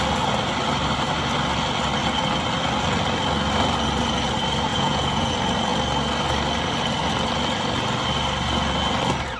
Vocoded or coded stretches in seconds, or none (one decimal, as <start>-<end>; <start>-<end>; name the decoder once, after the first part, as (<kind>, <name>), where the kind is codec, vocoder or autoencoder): 4.7-5.3 (vocoder, Vocos)